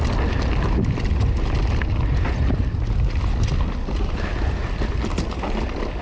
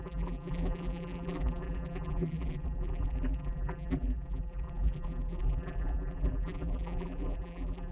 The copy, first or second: second